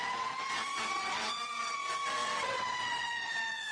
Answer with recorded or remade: remade